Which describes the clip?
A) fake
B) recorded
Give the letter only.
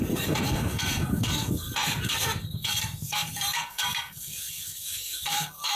A